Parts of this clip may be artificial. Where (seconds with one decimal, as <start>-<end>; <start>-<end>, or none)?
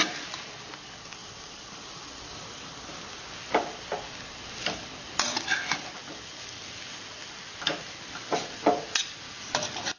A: 1.2-3.2